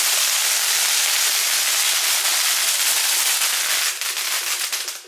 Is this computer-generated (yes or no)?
no